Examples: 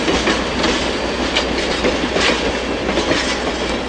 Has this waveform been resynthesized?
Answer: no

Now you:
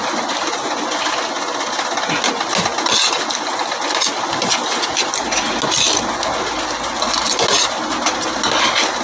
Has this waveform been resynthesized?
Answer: no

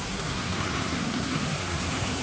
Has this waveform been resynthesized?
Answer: yes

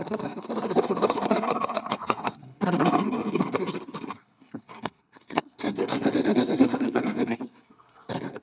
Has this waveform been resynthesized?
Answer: yes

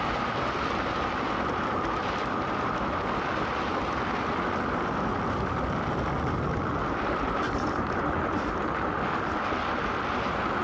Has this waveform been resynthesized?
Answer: no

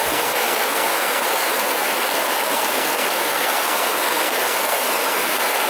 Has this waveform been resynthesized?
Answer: yes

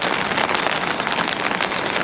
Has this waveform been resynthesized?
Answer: no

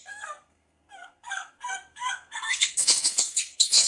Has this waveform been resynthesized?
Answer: yes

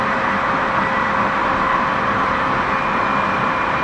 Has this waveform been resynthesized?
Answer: no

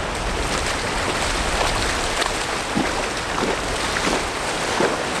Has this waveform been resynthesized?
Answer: no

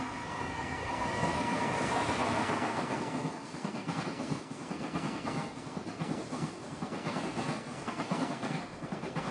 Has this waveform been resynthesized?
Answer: yes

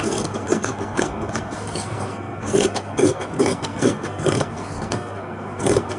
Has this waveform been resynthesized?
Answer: yes